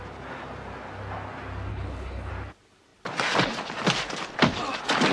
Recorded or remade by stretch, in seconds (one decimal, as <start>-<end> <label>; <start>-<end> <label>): 0.0-1.7 recorded; 1.7-2.3 remade; 2.3-5.1 recorded